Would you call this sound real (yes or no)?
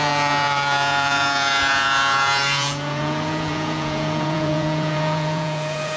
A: no